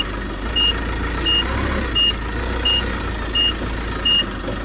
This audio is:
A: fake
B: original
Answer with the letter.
B